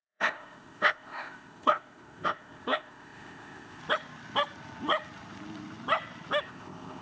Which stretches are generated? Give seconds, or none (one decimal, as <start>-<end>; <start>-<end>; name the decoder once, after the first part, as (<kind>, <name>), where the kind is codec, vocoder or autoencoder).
0.0-3.8 (codec, ZipCodec); 6.4-7.0